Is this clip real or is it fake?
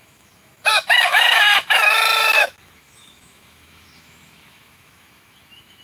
fake